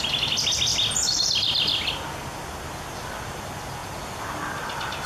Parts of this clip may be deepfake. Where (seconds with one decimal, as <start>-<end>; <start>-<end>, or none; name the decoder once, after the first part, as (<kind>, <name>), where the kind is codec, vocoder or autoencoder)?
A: 0.7-2.0 (vocoder, BigVGAN v2)